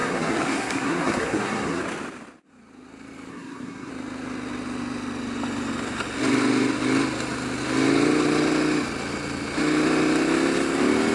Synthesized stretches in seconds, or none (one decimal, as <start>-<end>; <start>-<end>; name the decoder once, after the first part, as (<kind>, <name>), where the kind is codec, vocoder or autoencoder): 0.0-1.8 (codec, SNAC); 3.3-3.9